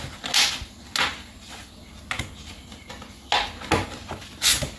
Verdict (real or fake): real